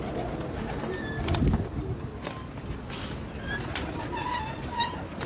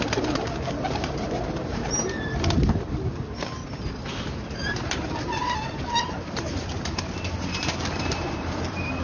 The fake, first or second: second